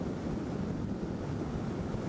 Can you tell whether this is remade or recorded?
recorded